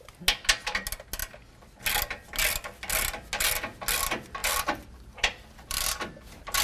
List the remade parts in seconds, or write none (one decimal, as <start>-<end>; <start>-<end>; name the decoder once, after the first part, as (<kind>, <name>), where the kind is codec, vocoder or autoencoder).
4.4-6.0 (vocoder, BigVGAN v2)